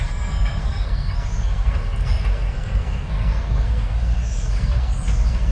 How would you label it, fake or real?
fake